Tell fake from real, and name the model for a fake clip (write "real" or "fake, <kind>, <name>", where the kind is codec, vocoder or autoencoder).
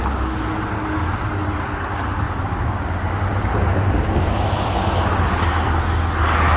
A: real